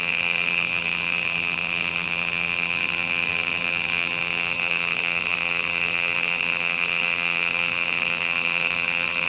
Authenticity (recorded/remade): remade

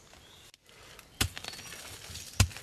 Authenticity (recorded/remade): recorded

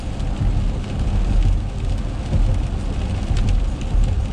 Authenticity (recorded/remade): recorded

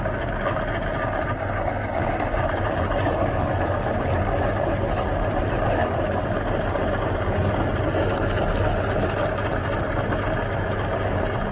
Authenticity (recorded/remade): recorded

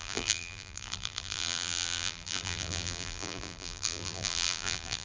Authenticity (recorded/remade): remade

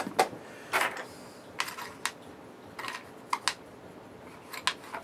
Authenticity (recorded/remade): recorded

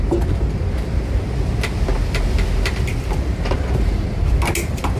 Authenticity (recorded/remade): recorded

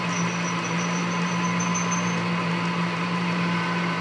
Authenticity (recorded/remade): recorded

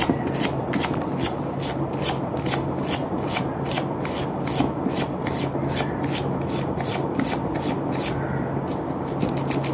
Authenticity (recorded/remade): recorded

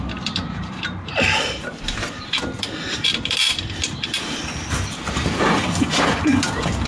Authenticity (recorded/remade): remade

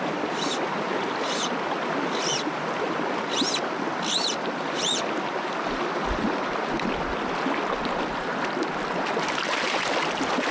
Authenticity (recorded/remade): recorded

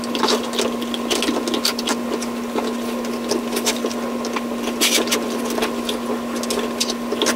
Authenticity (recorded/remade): recorded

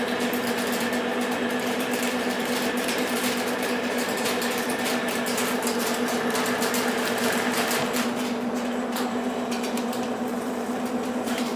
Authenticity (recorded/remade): remade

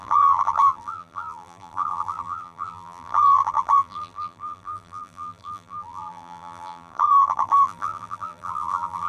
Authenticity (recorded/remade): remade